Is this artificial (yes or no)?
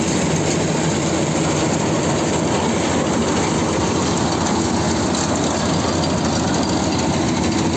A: no